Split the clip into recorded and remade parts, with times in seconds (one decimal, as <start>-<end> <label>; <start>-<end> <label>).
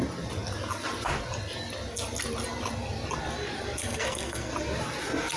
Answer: 0.0-3.8 recorded; 3.8-4.5 remade; 4.5-5.4 recorded